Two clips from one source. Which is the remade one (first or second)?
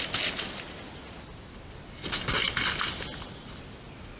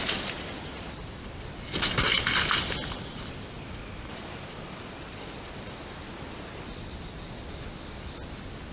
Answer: second